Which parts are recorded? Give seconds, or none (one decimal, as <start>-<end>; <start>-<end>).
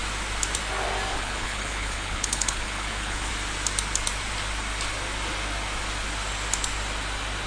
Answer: 0.0-1.1; 3.3-7.5